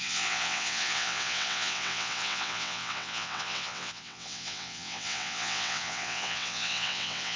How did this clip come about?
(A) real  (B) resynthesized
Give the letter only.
B